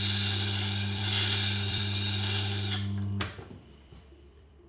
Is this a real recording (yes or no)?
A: no